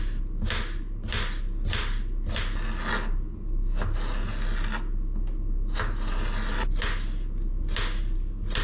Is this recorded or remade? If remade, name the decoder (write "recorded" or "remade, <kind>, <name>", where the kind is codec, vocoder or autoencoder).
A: recorded